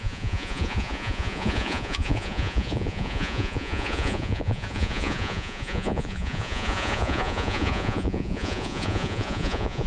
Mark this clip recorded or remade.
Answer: remade